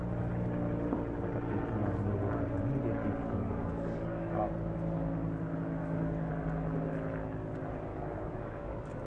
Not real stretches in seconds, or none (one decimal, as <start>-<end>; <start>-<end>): 3.2-4.5; 5.8-6.3; 7.9-9.1